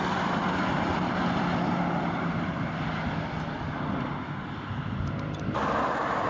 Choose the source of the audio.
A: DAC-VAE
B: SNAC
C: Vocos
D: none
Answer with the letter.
D